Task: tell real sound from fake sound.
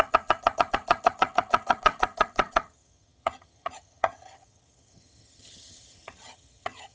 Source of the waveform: fake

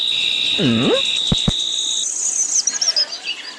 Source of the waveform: real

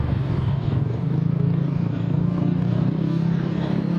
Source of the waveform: fake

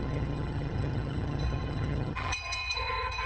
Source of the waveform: fake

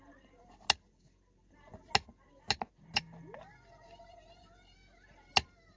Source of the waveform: real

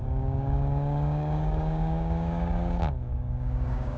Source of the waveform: fake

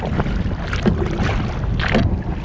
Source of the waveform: real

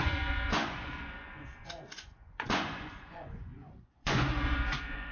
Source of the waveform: fake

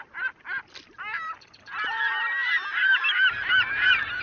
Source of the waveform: fake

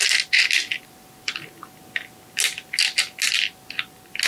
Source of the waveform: real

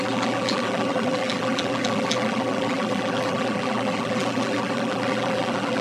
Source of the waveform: fake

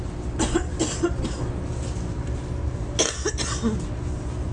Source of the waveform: real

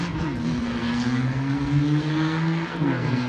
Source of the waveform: fake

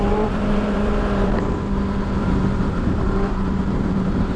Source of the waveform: fake